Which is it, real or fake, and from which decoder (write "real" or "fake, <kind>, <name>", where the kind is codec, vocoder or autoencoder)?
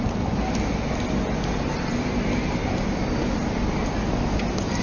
real